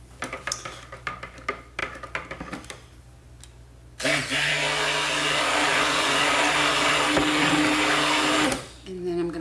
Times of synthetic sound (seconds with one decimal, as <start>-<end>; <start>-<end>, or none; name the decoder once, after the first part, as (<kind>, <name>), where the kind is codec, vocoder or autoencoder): 5.7-6.3 (vocoder, Vocos)